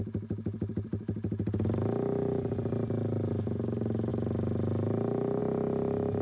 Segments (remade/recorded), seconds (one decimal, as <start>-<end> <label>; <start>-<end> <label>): 0.0-6.2 recorded